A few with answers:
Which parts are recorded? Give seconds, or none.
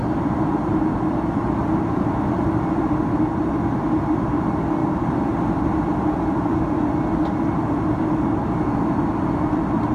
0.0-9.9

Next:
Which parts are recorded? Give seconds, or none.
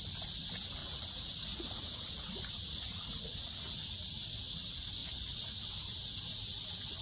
0.0-0.8; 4.2-5.0; 5.6-7.0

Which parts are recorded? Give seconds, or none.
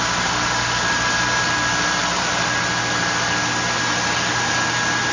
0.0-5.1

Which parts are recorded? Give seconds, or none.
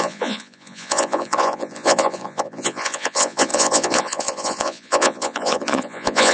none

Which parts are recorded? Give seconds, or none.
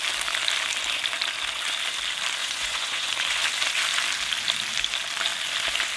0.0-2.4; 3.1-6.0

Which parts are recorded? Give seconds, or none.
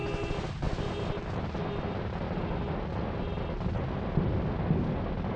0.0-5.4